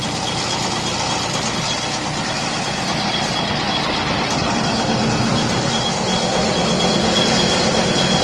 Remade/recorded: recorded